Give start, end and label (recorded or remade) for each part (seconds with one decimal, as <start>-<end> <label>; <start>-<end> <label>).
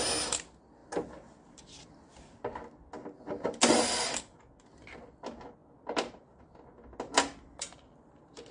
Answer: 0.0-8.5 recorded